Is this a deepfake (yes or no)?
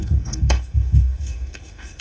yes